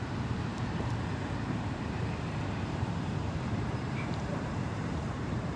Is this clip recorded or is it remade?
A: remade